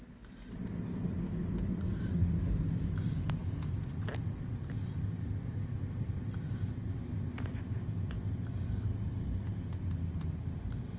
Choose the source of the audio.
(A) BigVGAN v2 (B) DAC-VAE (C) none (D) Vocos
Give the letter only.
C